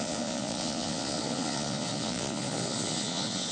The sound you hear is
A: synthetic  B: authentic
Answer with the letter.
A